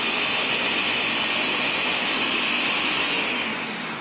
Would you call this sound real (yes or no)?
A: no